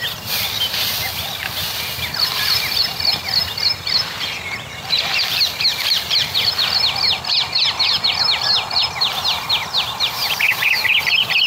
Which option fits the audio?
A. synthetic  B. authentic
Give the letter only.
B